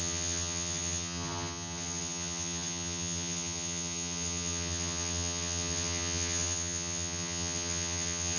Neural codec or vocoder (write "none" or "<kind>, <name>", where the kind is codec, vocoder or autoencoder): vocoder, HiFi-GAN